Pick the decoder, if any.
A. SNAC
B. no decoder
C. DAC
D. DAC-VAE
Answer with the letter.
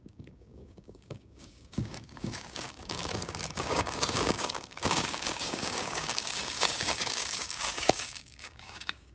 C